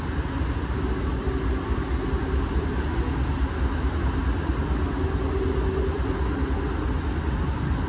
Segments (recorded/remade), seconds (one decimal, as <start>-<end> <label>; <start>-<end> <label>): 0.0-7.9 recorded